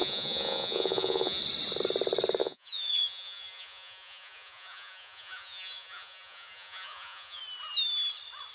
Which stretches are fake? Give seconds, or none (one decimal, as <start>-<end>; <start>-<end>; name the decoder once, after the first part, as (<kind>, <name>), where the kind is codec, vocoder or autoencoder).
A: 0.0-1.4 (vocoder, Vocos); 2.4-7.4

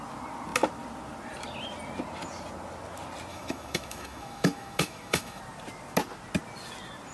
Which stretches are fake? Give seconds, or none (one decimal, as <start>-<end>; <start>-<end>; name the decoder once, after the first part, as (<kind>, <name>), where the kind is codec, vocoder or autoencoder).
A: 3.3-5.4 (autoencoder, DAC-VAE)

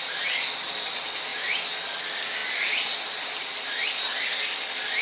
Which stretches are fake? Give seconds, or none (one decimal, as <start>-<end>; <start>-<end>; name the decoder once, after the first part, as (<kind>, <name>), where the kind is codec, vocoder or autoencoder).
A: none